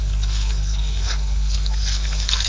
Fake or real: fake